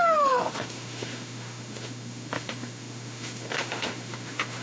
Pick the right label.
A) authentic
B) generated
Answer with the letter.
B